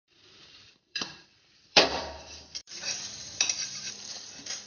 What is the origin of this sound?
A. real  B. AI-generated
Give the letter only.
B